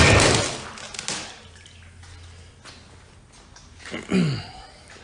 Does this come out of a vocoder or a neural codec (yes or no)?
no